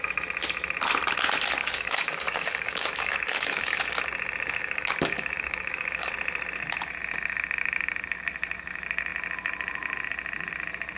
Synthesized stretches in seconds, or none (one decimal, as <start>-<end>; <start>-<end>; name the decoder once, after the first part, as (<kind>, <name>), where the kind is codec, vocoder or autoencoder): 1.6-3.8 (codec, DAC); 4.6-6.1

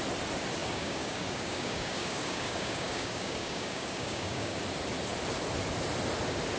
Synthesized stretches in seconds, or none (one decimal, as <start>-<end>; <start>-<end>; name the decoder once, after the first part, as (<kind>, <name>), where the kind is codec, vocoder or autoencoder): 0.6-4.6 (codec, DAC)

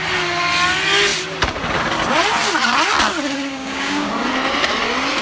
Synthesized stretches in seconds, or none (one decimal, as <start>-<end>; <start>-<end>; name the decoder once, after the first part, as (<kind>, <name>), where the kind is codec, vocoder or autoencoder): 3.5-4.1 (codec, DAC)

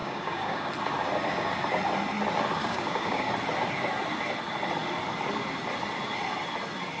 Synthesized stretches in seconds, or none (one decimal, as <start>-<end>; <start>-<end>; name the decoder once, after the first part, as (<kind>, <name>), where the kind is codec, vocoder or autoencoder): 0.0-0.7 (codec, DAC); 2.6-3.3